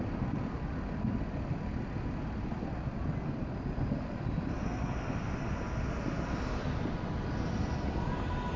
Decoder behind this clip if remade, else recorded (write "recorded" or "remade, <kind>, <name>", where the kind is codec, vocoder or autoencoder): recorded